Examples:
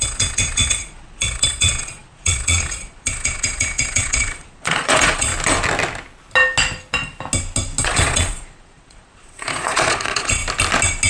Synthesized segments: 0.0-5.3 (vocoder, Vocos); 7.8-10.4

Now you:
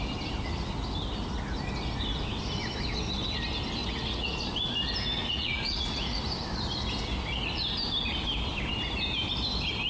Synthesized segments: 3.8-4.4 (vocoder, Vocos); 5.2-6.2

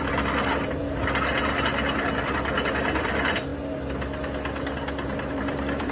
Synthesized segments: 0.0-0.8 (vocoder, BigVGAN v2); 2.0-3.5; 5.3-5.9